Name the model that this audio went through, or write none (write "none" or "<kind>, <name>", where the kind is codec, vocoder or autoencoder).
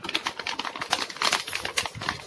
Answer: none